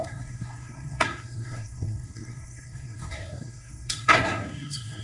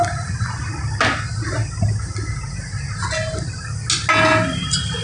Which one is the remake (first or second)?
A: first